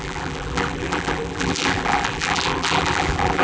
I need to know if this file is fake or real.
fake